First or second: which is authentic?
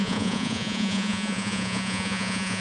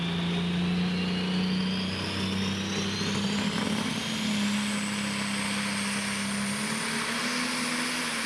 second